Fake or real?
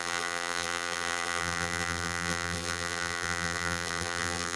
fake